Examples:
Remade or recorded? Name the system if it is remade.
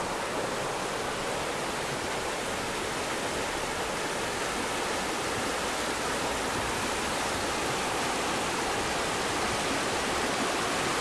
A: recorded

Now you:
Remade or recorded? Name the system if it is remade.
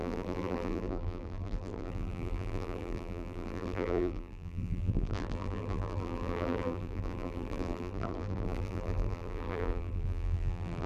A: remade, vocoder, BigVGAN v2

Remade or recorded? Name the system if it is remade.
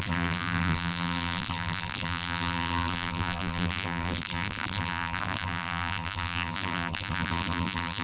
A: remade, vocoder, BigVGAN v2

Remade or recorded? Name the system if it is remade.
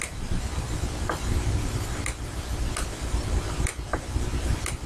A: remade, vocoder, BigVGAN v2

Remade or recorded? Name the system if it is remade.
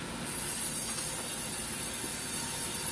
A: recorded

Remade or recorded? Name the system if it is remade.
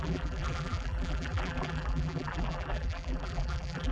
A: remade, vocoder, BigVGAN v2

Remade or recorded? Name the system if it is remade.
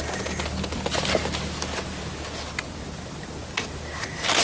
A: recorded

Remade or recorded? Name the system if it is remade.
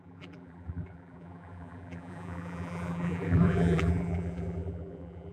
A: remade, vocoder, BigVGAN v2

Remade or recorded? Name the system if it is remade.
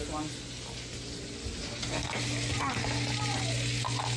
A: recorded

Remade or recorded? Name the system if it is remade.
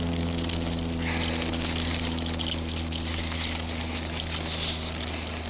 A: recorded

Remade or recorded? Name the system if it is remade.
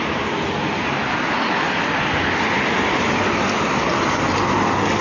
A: recorded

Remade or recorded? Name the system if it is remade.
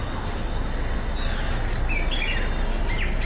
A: recorded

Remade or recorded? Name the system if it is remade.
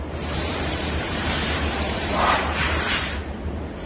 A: remade, vocoder, BigVGAN v2